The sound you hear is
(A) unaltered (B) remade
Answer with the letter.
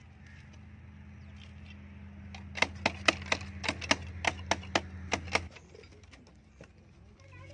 A